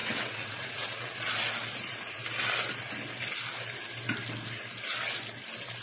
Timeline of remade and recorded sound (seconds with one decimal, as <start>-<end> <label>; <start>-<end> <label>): 0.0-1.3 remade; 1.3-5.8 recorded